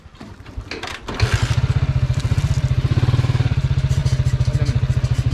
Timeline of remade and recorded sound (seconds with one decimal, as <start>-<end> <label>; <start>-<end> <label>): 0.0-4.0 remade; 4.0-5.3 recorded